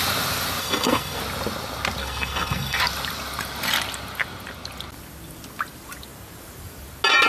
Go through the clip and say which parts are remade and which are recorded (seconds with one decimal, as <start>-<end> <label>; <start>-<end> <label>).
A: 0.0-0.6 recorded; 0.6-1.2 remade; 1.2-2.0 recorded; 2.0-2.8 remade; 2.8-7.3 recorded

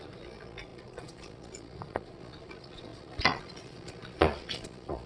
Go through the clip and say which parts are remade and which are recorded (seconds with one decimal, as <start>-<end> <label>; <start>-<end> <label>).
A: 0.0-5.1 remade

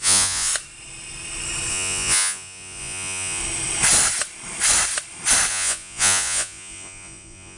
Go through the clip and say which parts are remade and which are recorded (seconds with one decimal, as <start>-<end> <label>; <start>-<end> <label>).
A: 0.0-0.5 remade; 0.5-1.7 recorded; 1.7-3.4 remade; 3.4-5.5 recorded; 5.5-7.6 remade